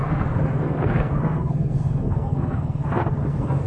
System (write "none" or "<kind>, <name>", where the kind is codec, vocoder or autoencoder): codec, SNAC